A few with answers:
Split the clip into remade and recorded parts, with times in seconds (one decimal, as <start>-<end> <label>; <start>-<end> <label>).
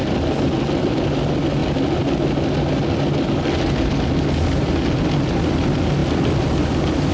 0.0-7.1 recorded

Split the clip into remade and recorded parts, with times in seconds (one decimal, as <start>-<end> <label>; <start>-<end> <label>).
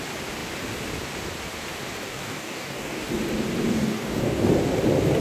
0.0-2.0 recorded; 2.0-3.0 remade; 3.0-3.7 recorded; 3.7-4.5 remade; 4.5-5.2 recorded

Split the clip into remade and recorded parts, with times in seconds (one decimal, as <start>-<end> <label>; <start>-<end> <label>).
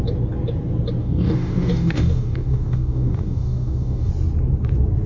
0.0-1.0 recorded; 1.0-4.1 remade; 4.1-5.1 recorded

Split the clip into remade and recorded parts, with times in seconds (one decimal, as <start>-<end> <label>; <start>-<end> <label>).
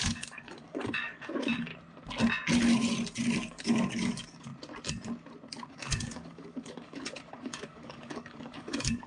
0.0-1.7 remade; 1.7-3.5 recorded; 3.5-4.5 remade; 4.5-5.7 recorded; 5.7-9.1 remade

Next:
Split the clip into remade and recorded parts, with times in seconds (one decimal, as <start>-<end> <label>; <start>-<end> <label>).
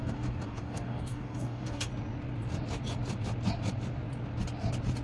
0.0-1.9 remade; 1.9-5.0 recorded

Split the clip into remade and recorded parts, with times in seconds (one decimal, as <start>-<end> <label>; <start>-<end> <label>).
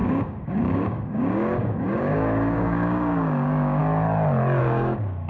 0.0-3.8 remade; 3.8-4.6 recorded; 4.6-5.3 remade